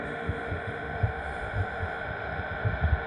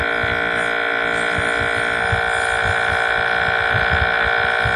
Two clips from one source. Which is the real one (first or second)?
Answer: second